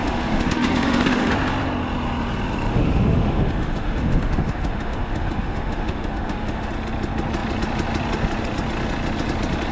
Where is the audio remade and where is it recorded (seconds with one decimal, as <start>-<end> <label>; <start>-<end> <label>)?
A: 0.0-1.3 remade; 1.3-2.7 recorded; 2.7-6.7 remade; 6.7-9.7 recorded